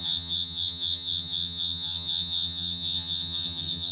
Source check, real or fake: fake